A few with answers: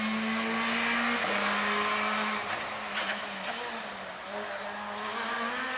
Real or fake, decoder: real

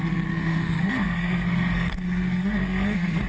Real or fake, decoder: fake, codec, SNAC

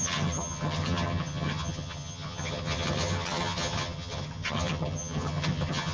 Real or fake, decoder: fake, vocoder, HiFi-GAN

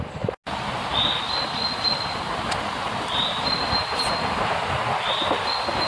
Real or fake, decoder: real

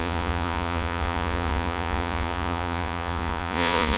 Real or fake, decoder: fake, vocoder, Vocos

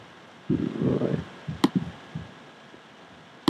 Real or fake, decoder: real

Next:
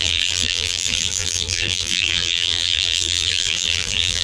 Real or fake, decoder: fake, vocoder, BigVGAN v2